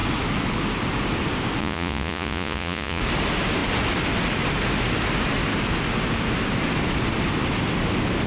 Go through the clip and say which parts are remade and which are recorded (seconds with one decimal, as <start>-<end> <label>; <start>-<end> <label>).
0.0-1.6 recorded; 1.6-3.0 remade; 3.0-8.3 recorded